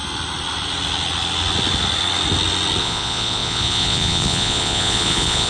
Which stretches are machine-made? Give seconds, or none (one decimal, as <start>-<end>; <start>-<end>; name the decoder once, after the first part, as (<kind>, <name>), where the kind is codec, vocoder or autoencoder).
2.8-5.5 (vocoder, Vocos)